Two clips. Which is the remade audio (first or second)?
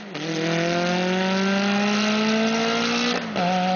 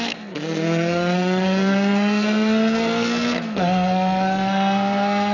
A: second